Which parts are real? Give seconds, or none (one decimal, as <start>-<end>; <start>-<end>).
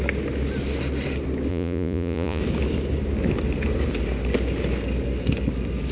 0.0-1.5; 2.4-5.9